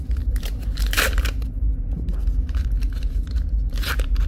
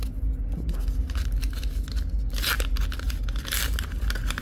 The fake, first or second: first